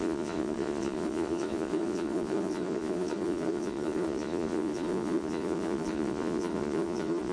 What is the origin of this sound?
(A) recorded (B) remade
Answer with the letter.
B